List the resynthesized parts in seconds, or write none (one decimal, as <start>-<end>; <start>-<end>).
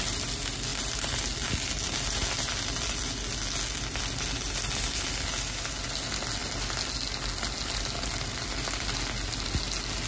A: none